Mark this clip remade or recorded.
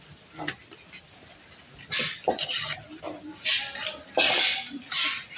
recorded